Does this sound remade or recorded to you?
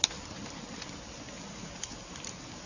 recorded